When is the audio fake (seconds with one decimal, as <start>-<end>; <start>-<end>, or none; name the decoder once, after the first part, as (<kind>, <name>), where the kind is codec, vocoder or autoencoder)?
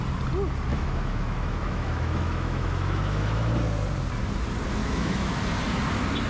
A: 0.7-3.5 (autoencoder, DAC-VAE); 4.8-5.4